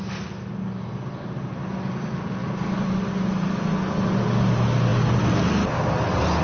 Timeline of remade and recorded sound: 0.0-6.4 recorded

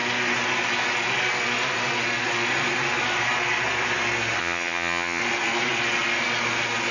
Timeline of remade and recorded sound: 0.0-4.4 recorded; 4.4-5.2 remade; 5.2-6.9 recorded